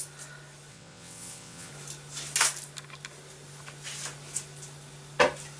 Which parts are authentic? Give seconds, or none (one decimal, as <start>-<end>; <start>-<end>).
0.0-0.7; 1.7-5.6